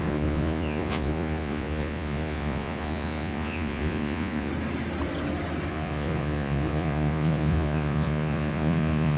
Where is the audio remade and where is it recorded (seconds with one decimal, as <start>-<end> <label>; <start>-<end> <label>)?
0.0-4.5 remade; 4.5-5.7 recorded; 5.7-9.2 remade